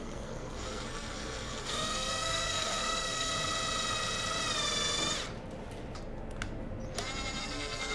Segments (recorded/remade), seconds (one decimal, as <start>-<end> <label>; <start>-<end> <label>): 0.0-3.3 remade; 3.3-7.4 recorded; 7.4-7.9 remade